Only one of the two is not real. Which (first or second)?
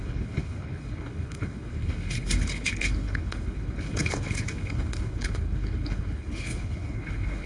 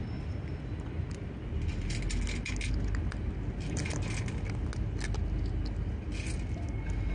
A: first